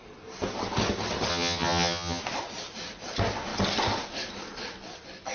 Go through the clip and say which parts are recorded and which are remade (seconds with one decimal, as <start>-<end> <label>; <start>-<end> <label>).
0.0-1.3 recorded; 1.3-2.2 remade; 2.2-5.3 recorded